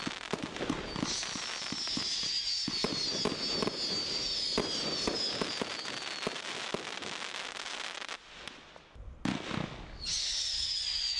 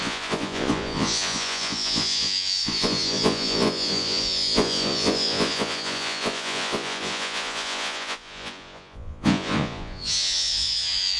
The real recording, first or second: first